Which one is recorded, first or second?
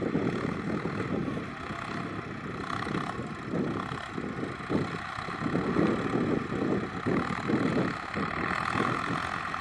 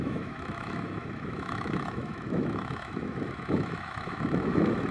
first